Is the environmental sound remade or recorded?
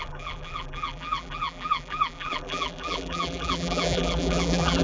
remade